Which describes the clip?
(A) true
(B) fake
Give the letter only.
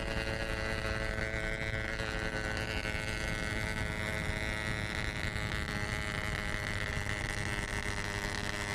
A